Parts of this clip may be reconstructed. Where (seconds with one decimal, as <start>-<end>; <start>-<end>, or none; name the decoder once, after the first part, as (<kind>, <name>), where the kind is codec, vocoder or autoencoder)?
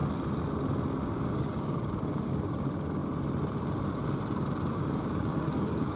1.0-3.0 (codec, DAC); 4.7-6.0